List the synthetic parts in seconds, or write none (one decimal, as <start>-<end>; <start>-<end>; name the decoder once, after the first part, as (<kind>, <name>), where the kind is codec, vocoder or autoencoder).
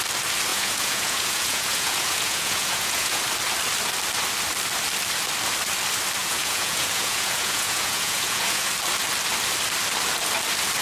0.5-3.2 (vocoder, Vocos); 6.2-8.7